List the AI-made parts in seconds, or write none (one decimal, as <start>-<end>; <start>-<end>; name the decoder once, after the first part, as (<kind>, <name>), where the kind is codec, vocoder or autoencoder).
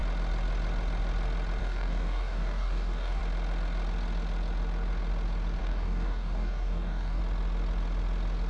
1.6-3.2 (codec, DAC); 5.6-7.2